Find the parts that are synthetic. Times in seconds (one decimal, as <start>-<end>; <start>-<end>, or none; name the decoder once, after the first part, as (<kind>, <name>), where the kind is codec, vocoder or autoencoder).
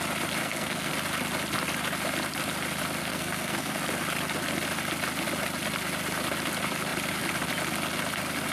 0.4-0.9 (codec, SNAC); 3.0-3.8